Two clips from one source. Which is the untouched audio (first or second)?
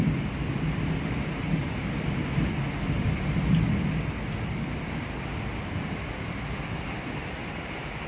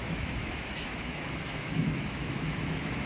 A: first